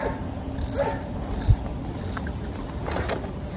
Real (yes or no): yes